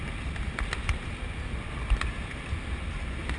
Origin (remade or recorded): recorded